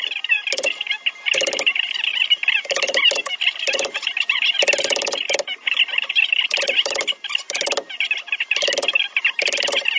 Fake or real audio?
real